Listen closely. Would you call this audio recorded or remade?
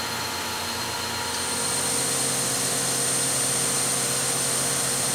recorded